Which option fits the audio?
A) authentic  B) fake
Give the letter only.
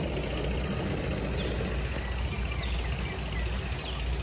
A